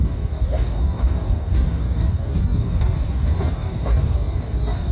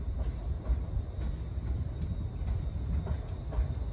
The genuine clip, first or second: second